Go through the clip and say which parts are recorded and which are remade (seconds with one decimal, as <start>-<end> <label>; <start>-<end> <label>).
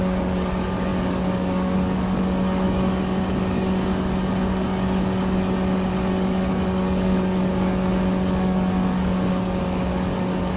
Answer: 0.0-10.6 remade